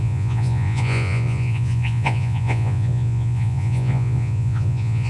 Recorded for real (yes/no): no